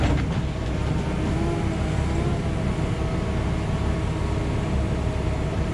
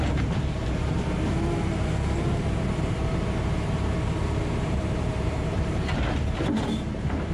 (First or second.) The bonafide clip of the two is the first